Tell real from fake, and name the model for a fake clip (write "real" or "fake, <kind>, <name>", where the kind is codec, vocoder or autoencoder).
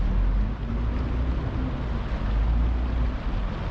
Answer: real